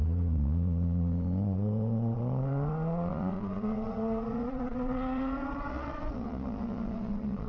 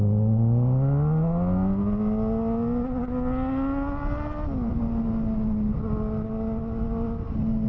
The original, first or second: second